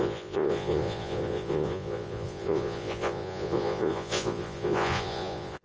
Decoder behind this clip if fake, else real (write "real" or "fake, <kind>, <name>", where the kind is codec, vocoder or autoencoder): fake, vocoder, Vocos